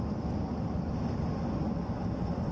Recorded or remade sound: recorded